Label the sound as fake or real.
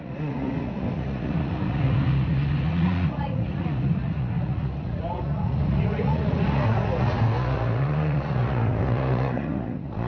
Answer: fake